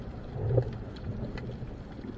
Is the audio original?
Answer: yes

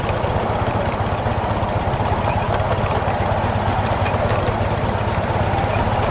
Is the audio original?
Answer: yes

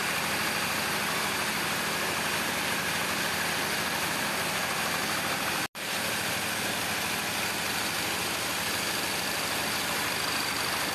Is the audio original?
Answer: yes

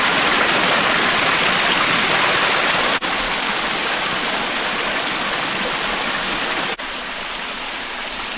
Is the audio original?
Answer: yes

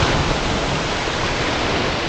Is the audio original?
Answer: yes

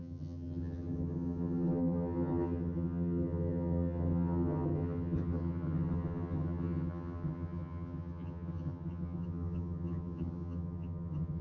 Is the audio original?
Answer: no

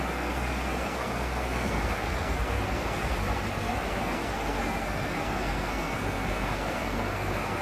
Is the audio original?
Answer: no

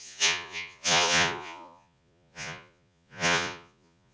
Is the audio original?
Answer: no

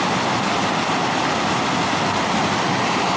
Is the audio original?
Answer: yes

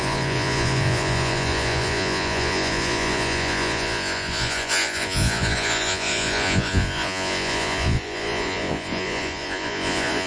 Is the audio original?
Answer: no